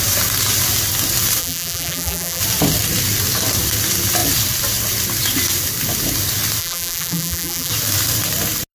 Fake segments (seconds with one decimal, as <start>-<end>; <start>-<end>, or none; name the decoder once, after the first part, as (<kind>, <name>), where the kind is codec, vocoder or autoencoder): 1.4-2.4 (vocoder, BigVGAN v2); 6.6-7.7